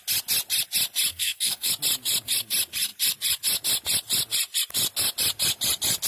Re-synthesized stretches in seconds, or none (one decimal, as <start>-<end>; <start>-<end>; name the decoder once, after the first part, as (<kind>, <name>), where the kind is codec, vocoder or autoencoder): 1.1-1.7 (codec, SNAC)